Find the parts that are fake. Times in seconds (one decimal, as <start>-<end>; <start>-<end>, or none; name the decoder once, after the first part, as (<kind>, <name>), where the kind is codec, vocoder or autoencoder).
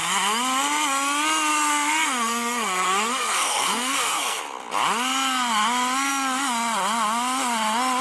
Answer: 1.5-4.4 (codec, SNAC)